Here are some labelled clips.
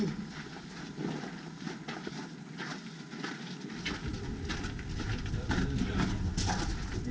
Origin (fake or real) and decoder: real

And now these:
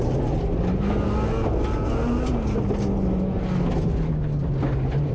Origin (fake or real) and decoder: real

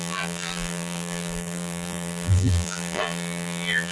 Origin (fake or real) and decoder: fake, vocoder, BigVGAN v2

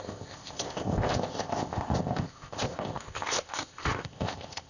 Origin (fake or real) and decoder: fake, codec, ZipCodec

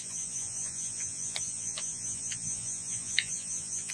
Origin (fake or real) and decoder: fake, vocoder, Vocos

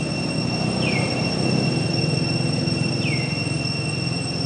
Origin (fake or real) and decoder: real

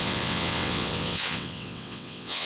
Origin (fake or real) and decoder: fake, vocoder, WaveNeXt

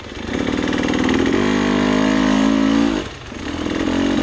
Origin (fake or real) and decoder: real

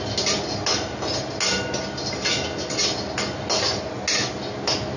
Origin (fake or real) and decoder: real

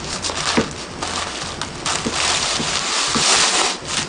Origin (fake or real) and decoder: real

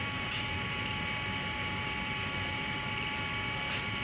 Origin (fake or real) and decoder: real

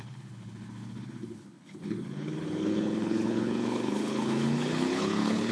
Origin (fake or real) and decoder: fake, codec, HILCodec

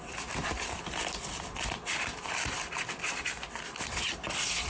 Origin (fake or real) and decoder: real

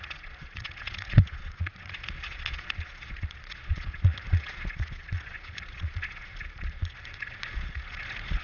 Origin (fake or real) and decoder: fake, vocoder, Vocos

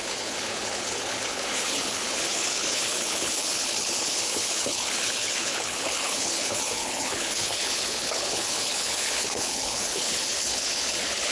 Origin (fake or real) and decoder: fake, codec, HILCodec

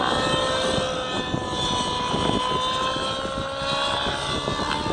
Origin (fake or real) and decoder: real